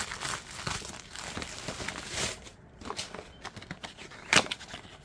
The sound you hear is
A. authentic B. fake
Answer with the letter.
A